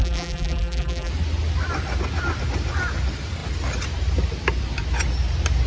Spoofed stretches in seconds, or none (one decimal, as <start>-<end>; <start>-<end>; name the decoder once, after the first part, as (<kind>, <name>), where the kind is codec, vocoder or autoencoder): 0.0-1.1 (vocoder, BigVGAN v2)